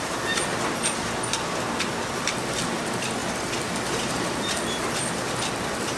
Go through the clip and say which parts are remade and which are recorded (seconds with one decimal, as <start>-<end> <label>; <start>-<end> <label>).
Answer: 0.0-6.0 recorded